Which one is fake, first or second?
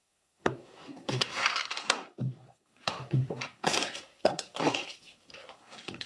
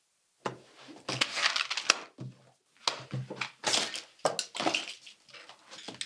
first